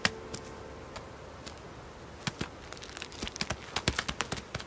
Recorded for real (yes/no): yes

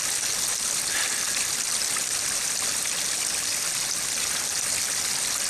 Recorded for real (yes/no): yes